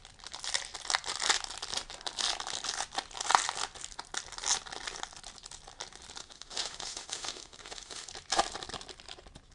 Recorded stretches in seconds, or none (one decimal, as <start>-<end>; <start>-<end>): 0.0-6.2; 8.1-9.5